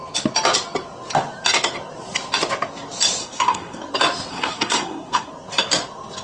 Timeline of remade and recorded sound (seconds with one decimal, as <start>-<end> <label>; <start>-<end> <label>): 0.0-3.2 recorded; 3.2-3.9 remade; 3.9-4.3 recorded; 4.3-5.3 remade; 5.3-6.2 recorded